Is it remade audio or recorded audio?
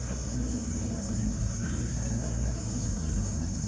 remade